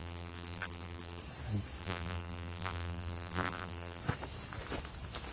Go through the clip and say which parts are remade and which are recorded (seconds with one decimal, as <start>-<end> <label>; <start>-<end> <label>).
0.0-1.2 remade; 1.2-1.8 recorded; 1.8-4.0 remade; 4.0-5.3 recorded